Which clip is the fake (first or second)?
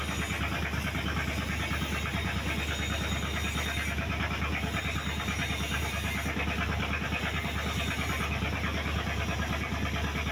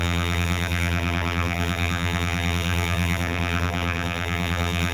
second